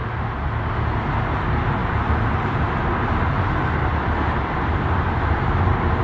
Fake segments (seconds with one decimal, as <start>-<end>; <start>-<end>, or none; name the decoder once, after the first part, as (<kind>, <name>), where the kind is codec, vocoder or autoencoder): 1.8-2.6 (vocoder, BigVGAN v2); 3.9-5.6